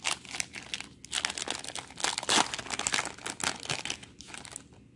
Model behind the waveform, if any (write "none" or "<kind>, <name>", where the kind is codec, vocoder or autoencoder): none